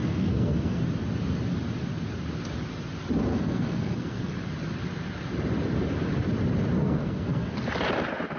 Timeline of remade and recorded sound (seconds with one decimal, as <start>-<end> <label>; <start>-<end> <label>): 0.0-0.8 remade; 0.8-3.3 recorded; 3.3-4.3 remade; 4.3-6.8 recorded; 6.8-7.5 remade; 7.5-8.4 recorded